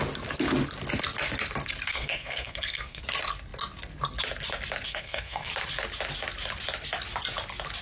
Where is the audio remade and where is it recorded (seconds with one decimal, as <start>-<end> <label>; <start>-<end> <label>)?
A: 0.0-1.9 recorded; 1.9-3.0 remade; 3.0-4.9 recorded; 4.9-5.5 remade; 5.5-7.8 recorded